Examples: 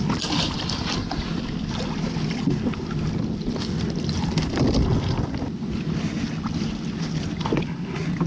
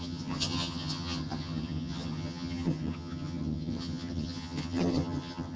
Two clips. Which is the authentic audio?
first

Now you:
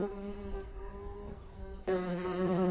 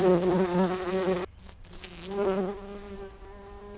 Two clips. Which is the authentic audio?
second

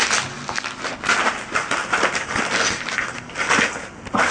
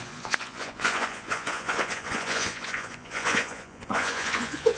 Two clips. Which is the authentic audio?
first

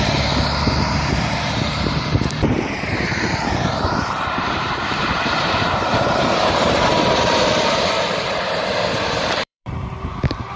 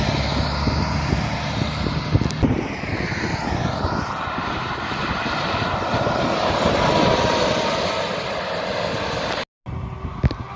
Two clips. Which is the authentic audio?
second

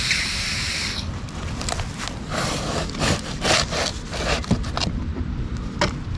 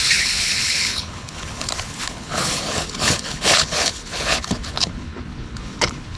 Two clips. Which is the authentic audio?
first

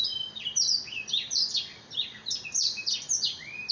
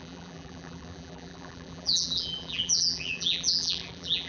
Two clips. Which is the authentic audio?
first